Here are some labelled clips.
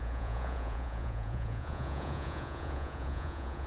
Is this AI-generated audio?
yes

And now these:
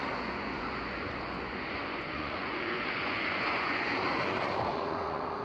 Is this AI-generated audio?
yes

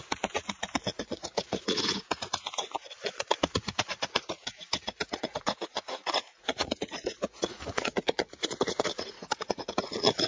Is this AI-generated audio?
yes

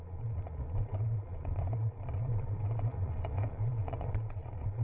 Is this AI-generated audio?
yes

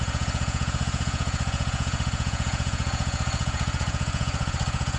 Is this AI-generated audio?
yes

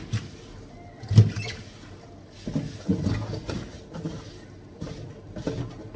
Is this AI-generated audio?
no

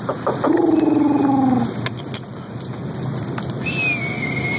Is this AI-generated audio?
no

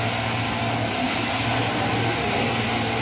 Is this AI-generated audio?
no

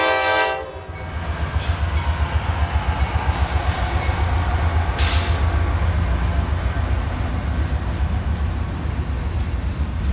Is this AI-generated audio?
no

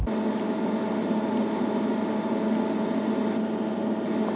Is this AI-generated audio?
no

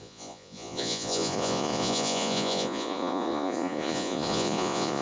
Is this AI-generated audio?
yes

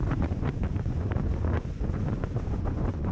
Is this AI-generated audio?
yes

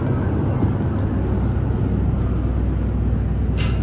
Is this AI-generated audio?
no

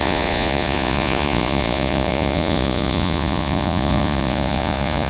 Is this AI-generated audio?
yes